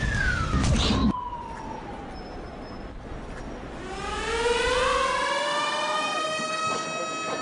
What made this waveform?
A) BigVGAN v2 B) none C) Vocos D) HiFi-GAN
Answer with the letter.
B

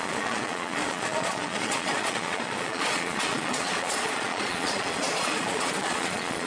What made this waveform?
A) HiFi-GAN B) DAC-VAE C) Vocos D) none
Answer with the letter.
C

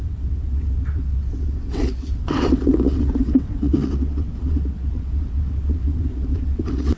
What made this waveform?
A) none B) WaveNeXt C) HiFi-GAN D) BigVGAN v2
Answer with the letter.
B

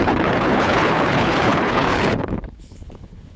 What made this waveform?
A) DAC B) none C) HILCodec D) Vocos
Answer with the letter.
C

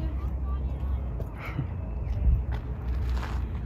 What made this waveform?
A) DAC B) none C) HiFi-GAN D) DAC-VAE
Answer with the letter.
B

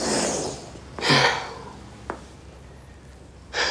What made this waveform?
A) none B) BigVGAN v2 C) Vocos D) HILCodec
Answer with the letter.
A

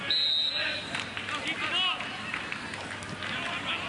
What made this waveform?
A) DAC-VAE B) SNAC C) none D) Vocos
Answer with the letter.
C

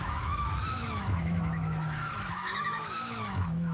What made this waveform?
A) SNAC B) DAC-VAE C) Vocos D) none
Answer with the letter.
B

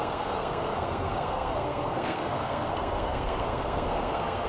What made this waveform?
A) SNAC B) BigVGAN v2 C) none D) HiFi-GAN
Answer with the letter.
A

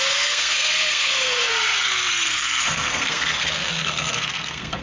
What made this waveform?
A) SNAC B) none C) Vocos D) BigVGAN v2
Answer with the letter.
A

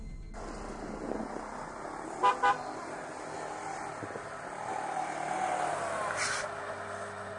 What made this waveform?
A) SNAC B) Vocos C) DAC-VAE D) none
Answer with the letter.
D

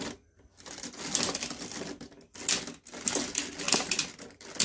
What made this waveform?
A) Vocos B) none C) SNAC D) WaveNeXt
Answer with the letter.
B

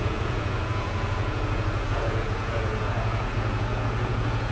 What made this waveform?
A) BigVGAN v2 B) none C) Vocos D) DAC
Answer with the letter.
C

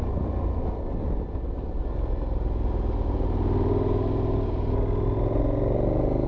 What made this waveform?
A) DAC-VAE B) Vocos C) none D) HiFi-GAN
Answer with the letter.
C